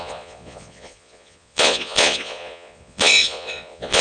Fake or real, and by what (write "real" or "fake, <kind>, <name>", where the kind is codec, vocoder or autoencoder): fake, vocoder, Vocos